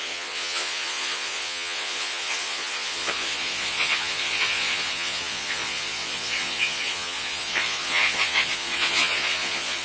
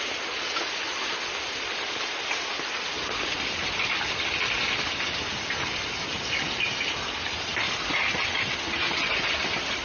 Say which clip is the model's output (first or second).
first